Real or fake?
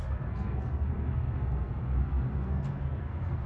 fake